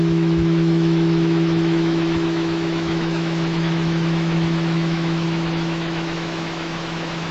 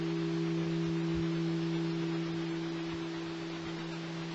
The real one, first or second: second